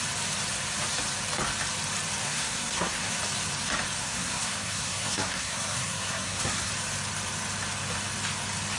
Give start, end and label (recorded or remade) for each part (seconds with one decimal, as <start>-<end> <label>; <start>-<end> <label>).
0.0-2.2 recorded; 2.2-3.2 remade; 3.2-4.0 recorded; 4.0-6.7 remade; 6.7-8.8 recorded